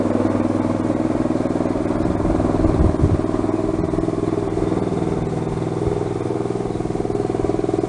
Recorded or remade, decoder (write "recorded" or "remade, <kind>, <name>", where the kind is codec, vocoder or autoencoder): recorded